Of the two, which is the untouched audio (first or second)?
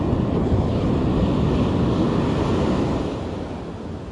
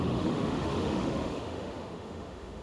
first